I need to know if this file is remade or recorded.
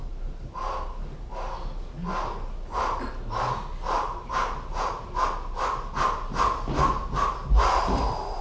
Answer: recorded